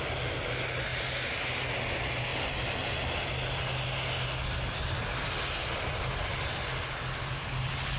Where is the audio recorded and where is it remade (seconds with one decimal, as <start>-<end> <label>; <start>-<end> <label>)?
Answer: 0.0-8.0 recorded